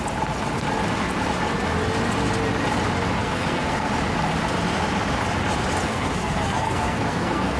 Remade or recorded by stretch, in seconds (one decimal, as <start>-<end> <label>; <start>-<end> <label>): 0.0-3.2 recorded; 3.2-3.9 remade; 3.9-5.8 recorded; 5.8-7.6 remade